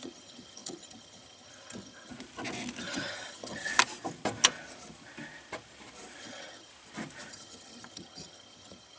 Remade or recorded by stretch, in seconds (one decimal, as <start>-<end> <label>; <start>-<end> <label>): 0.0-2.1 remade; 2.1-2.8 recorded; 2.8-3.7 remade; 3.7-6.2 recorded; 6.2-6.7 remade; 6.7-7.3 recorded; 7.3-9.0 remade